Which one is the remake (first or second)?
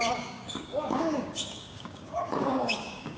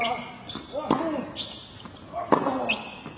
first